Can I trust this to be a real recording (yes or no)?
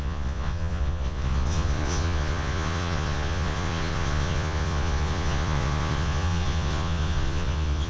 no